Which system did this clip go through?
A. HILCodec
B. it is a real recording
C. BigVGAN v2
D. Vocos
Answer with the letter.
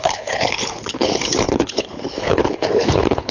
A